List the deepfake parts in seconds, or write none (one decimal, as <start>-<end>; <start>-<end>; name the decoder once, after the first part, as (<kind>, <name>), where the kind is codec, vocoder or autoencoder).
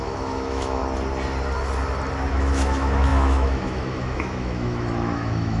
0.0-0.8 (autoencoder, DAC-VAE); 2.3-5.6